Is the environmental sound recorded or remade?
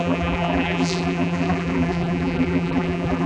remade